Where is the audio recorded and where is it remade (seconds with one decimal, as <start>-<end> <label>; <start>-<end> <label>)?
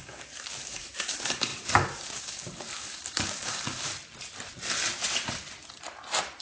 0.0-3.9 remade; 3.9-6.4 recorded